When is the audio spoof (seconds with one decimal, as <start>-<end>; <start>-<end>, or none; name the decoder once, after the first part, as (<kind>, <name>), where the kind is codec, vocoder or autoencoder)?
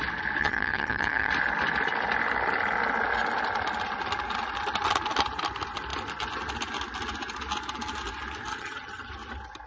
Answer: 0.4-1.3 (vocoder, HiFi-GAN); 8.5-9.1